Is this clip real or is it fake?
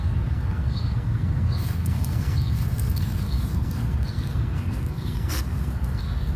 fake